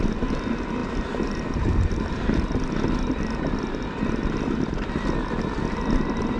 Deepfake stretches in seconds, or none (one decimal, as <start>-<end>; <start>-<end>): none